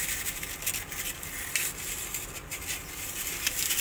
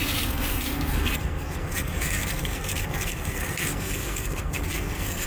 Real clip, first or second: first